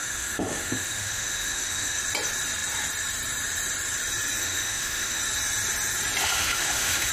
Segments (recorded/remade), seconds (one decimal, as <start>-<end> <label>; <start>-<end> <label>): 0.0-2.0 remade; 2.0-4.4 recorded; 4.4-5.2 remade; 5.2-6.2 recorded; 6.2-7.1 remade